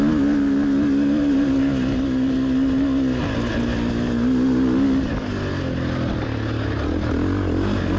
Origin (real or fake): real